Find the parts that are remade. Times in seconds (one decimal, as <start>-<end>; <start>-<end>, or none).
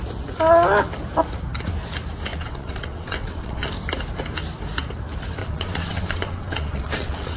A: 2.3-3.7; 5.4-7.4